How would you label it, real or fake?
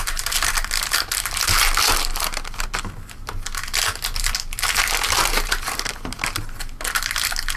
real